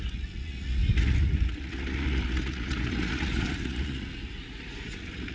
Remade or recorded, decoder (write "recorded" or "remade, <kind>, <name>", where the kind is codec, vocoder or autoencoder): remade, vocoder, Vocos